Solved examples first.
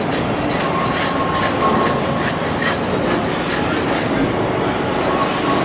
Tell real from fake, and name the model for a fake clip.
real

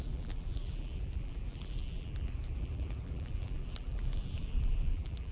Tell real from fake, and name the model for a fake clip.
fake, vocoder, BigVGAN v2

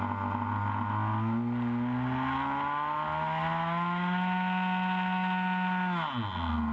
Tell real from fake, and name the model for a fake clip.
real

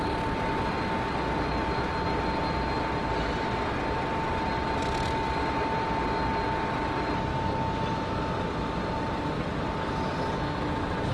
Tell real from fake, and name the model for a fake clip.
real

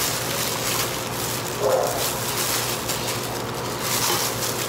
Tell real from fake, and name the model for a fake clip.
real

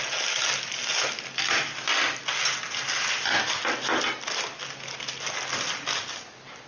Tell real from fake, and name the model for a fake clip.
real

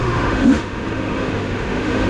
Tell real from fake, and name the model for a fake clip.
fake, autoencoder, DAC-VAE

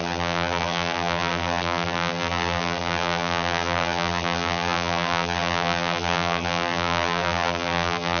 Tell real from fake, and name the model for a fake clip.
fake, vocoder, BigVGAN v2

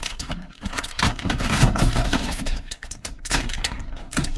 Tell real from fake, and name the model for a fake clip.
fake, codec, SNAC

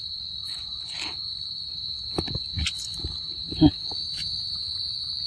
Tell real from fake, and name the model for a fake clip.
real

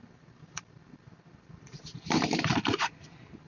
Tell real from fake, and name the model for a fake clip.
fake, vocoder, BigVGAN v2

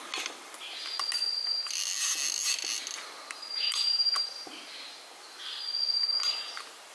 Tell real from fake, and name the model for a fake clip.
real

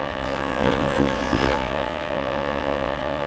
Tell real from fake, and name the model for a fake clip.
fake, vocoder, WaveNeXt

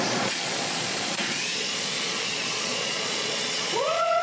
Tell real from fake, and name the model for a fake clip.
fake, vocoder, Vocos